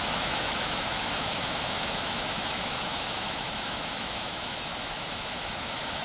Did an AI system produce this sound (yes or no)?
yes